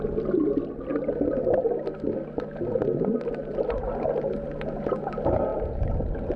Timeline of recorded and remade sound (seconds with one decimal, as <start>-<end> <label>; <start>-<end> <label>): 0.0-6.4 recorded